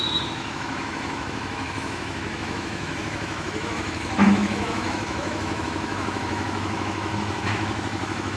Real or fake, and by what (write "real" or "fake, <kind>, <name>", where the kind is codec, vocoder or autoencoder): fake, autoencoder, DAC-VAE